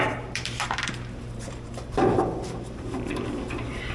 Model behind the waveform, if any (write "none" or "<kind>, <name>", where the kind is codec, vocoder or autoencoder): vocoder, BigVGAN v2